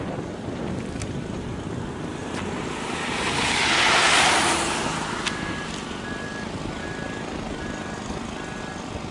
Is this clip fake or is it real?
real